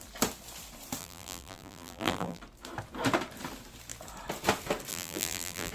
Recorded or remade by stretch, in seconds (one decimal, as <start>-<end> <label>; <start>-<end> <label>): 0.0-1.0 recorded; 1.0-2.4 remade; 2.4-4.9 recorded; 4.9-5.7 remade

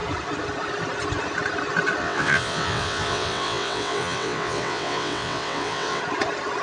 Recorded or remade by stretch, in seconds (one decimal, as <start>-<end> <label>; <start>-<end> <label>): 0.0-2.0 recorded; 2.0-6.0 remade; 6.0-6.6 recorded